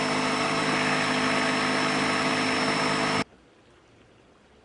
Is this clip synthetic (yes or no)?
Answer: no